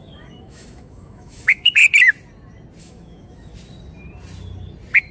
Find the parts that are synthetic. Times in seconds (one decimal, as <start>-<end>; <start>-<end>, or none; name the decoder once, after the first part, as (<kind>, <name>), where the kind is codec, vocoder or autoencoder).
0.0-1.8 (autoencoder, DAC-VAE); 2.8-3.5